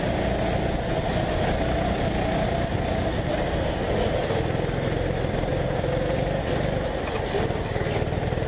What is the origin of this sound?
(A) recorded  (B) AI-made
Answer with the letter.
A